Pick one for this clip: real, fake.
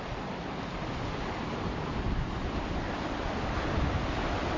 real